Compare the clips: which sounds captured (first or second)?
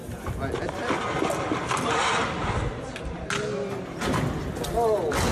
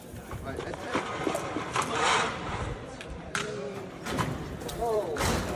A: first